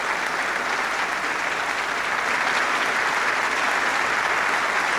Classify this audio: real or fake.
real